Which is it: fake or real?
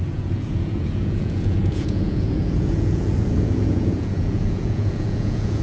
fake